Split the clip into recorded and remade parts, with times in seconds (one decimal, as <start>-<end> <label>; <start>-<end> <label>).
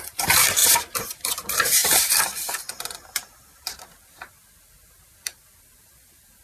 0.0-6.4 remade